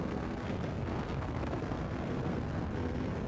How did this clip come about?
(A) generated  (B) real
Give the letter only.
A